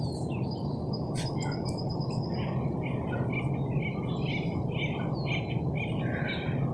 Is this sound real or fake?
real